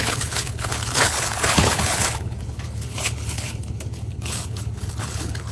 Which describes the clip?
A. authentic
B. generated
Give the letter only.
B